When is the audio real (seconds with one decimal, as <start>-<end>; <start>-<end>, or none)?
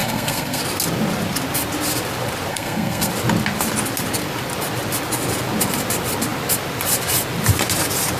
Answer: 0.6-2.5; 3.1-8.2